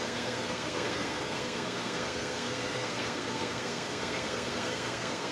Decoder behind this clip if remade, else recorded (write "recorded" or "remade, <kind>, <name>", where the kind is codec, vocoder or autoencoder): remade, codec, SNAC